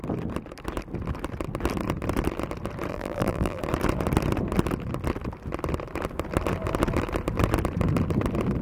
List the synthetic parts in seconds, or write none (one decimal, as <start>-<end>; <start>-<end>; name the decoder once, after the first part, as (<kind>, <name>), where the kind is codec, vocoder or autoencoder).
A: 2.9-3.6 (vocoder, BigVGAN v2)